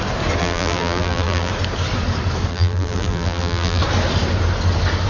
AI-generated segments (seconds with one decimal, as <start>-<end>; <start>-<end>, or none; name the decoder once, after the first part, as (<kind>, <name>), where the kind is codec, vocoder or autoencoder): 0.4-1.5 (vocoder, BigVGAN v2); 2.5-3.8